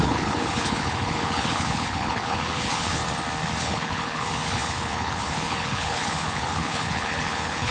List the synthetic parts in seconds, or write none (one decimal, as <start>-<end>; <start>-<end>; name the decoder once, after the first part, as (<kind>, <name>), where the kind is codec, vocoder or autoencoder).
0.0-3.0 (codec, HILCodec); 3.6-7.7

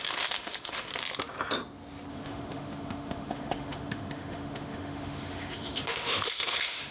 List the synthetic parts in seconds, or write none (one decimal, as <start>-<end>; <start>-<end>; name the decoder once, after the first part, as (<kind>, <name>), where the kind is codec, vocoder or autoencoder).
0.0-0.9 (autoencoder, DAC-VAE); 2.1-6.9

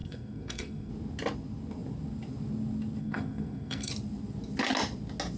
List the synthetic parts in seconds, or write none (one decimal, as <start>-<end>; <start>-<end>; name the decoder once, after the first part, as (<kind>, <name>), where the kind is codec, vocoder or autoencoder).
0.0-0.9 (codec, SNAC); 3.0-3.9

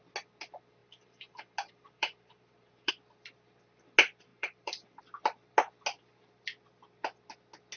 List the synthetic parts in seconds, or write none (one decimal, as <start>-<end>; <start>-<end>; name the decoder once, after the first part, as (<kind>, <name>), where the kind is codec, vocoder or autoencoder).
0.8-2.9 (vocoder, BigVGAN v2); 4.3-5.0